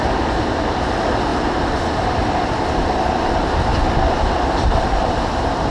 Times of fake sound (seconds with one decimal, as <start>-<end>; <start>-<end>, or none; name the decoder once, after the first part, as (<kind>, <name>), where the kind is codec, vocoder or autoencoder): none